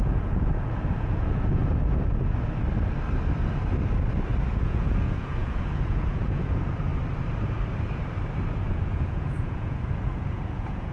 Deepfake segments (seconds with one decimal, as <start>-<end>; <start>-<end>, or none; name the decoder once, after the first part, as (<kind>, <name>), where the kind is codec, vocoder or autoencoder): 0.0-1.6 (vocoder, Vocos); 4.6-6.9; 8.6-10.9